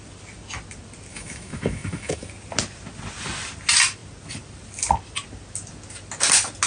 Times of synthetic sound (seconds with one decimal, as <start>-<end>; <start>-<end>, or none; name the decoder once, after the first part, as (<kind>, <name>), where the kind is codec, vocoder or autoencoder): 1.1-2.3 (autoencoder, DAC-VAE)